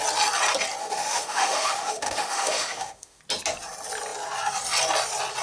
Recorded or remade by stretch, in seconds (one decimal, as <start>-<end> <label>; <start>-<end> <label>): 0.0-0.8 recorded; 0.8-3.2 remade; 3.2-5.4 recorded